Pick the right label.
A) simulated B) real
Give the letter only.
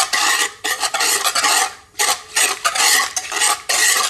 B